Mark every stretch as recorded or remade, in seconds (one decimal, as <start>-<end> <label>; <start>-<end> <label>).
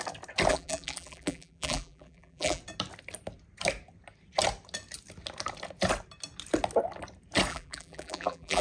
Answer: 0.0-0.5 recorded; 0.5-2.6 remade; 2.6-7.5 recorded; 7.5-8.6 remade